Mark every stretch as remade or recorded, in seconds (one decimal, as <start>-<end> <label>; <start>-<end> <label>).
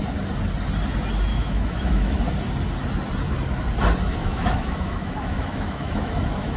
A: 0.0-1.3 recorded; 1.3-2.2 remade; 2.2-4.2 recorded; 4.2-6.6 remade